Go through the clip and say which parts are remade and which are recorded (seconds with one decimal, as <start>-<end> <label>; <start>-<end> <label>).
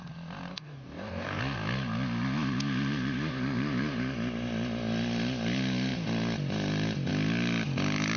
0.0-0.5 recorded; 0.5-1.4 remade; 1.4-8.2 recorded